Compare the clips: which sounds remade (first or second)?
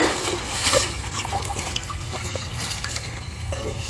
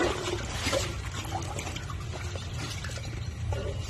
first